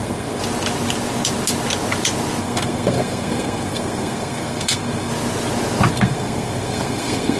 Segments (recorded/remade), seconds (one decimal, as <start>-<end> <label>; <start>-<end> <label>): 0.0-0.4 remade; 0.4-2.4 recorded; 2.4-5.1 remade; 5.1-5.9 recorded; 5.9-7.4 remade